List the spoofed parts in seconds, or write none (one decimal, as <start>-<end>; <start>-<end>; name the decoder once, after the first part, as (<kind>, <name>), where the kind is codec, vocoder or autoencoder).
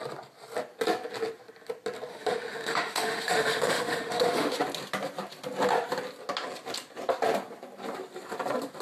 2.1-4.6 (autoencoder, DAC-VAE)